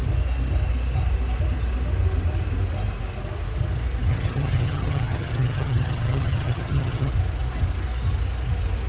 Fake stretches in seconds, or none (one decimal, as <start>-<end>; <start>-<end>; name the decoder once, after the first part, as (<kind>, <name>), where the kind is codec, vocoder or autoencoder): 4.1-7.1 (vocoder, HiFi-GAN)